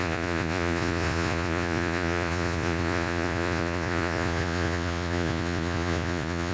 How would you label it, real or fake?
fake